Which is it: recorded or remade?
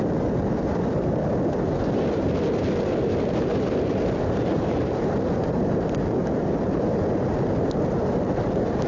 recorded